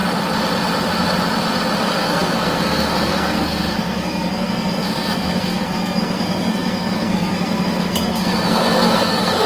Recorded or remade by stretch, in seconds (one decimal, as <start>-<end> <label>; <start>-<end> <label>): 0.0-1.8 recorded; 1.8-9.5 remade